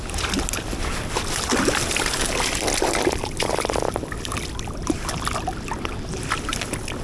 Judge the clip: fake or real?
real